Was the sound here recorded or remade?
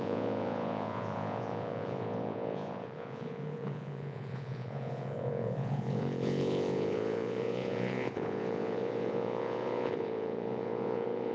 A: remade